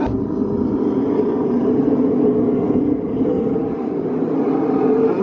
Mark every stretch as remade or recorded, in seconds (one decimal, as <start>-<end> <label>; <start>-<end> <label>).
0.0-5.2 recorded